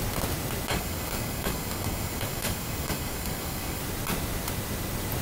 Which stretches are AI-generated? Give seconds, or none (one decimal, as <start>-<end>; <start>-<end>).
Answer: 0.7-3.8